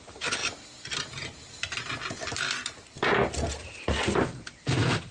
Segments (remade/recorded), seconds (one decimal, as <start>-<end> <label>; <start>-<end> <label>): 0.0-5.1 recorded